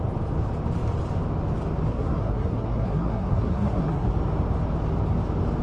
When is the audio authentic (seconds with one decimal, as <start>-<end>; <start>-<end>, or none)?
0.0-1.9; 4.1-5.6